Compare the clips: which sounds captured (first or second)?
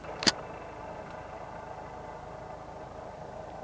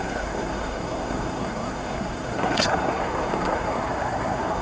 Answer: first